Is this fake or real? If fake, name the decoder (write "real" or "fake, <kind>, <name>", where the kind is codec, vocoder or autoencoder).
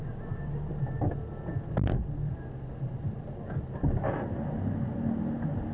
real